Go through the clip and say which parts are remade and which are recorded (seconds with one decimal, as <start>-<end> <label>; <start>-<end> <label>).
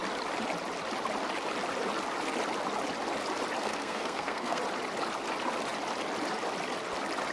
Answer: 0.0-3.6 recorded; 3.6-4.6 remade; 4.6-7.3 recorded